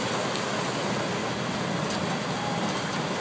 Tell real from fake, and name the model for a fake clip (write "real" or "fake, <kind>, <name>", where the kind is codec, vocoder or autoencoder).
real